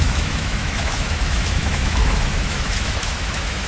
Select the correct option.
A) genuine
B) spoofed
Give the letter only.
B